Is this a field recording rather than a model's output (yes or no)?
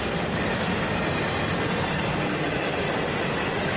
yes